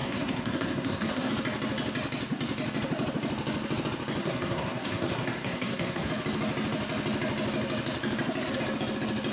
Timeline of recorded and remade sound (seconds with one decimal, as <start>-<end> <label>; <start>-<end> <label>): 0.0-1.3 remade; 1.3-4.2 recorded; 4.2-6.1 remade; 6.1-9.3 recorded